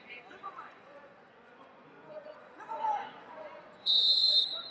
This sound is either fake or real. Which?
fake